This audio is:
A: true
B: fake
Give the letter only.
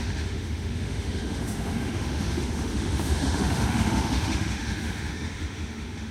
B